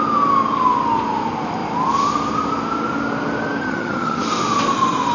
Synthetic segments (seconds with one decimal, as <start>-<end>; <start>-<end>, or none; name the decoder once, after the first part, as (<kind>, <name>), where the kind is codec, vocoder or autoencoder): 3.6-4.2 (vocoder, HiFi-GAN)